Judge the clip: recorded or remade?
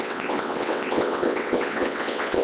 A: remade